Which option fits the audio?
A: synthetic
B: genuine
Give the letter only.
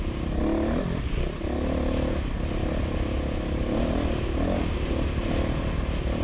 B